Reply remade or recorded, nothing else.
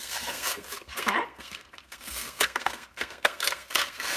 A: remade